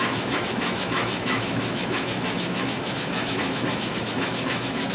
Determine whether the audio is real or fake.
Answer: fake